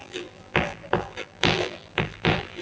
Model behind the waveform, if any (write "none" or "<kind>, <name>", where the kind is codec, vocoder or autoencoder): vocoder, BigVGAN v2